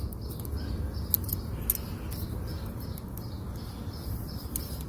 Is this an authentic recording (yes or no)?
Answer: yes